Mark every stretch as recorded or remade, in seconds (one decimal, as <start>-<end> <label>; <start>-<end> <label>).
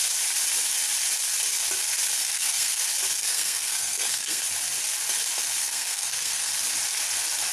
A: 0.0-2.2 recorded; 2.2-2.8 remade; 2.8-3.2 recorded; 3.2-4.4 remade; 4.4-5.6 recorded; 5.6-6.5 remade; 6.5-7.5 recorded